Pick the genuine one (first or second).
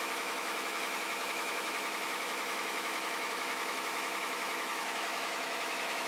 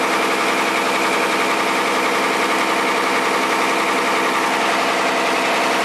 second